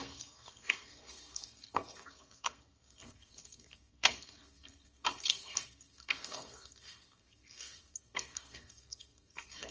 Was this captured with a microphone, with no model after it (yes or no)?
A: no